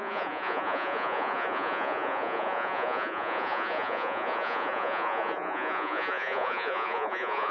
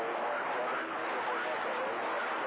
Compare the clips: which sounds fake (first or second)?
first